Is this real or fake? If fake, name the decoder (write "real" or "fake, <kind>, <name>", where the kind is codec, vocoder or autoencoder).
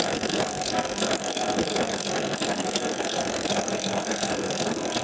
fake, codec, SNAC